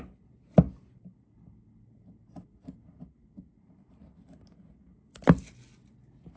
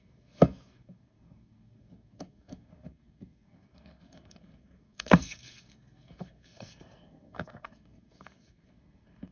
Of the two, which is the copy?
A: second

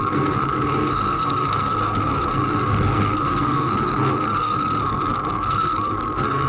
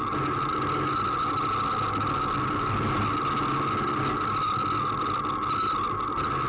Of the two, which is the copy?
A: first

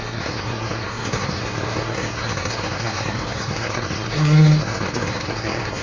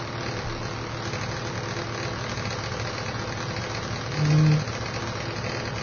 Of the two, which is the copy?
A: first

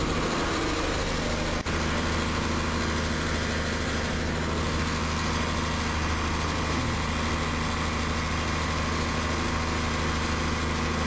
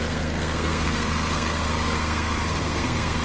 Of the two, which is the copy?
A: second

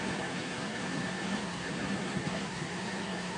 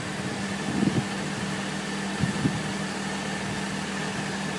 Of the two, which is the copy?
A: first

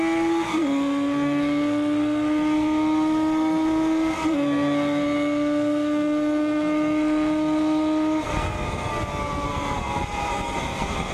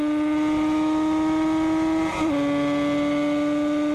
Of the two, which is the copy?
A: first